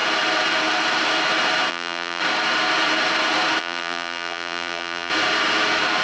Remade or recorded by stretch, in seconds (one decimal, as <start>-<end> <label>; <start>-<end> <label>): 0.0-1.7 recorded; 1.7-2.2 remade; 2.2-3.6 recorded; 3.6-5.1 remade; 5.1-6.0 recorded